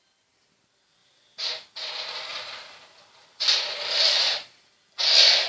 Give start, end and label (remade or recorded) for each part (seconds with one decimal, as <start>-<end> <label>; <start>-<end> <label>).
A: 0.0-1.0 recorded; 1.0-1.5 remade; 1.5-2.3 recorded; 2.3-3.5 remade; 3.5-5.5 recorded